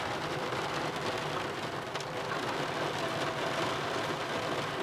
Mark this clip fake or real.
real